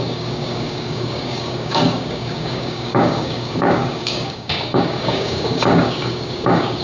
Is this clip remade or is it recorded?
remade